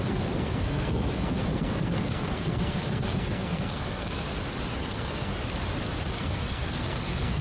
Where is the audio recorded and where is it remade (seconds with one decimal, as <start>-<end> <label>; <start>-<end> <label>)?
0.0-4.3 remade; 4.3-4.8 recorded; 4.8-5.3 remade; 5.3-6.1 recorded; 6.1-7.4 remade